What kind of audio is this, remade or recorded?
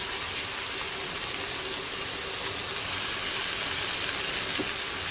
recorded